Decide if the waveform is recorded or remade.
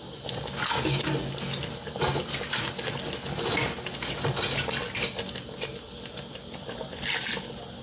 recorded